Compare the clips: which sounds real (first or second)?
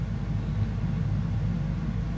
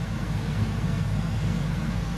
first